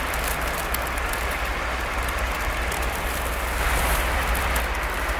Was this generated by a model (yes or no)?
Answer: no